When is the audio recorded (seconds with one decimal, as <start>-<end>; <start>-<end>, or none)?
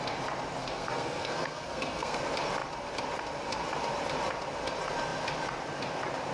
0.0-0.6; 2.2-6.3